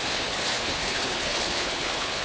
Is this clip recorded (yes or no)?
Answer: no